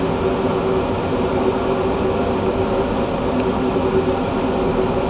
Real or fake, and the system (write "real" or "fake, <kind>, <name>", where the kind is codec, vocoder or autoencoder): real